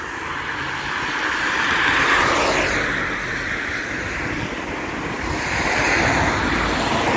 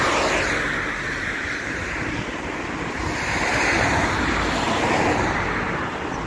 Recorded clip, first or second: first